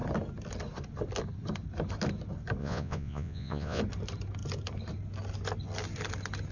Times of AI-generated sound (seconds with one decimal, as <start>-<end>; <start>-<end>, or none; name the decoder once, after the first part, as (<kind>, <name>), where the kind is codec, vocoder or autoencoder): 2.6-3.8 (vocoder, Vocos)